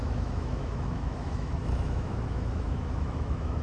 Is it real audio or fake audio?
fake